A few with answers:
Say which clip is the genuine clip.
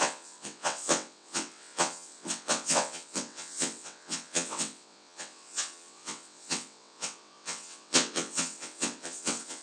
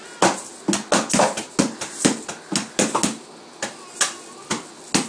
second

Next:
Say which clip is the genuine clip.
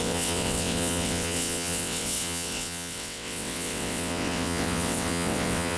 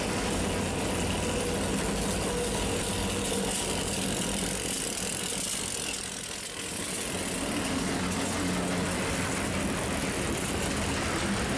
second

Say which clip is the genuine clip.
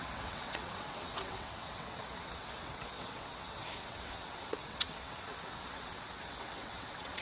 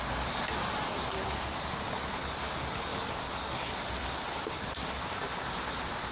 second